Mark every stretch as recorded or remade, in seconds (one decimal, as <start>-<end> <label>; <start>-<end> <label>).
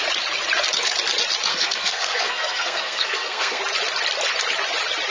0.0-1.5 recorded; 1.5-3.6 remade; 3.6-5.1 recorded